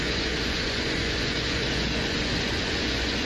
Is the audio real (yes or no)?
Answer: no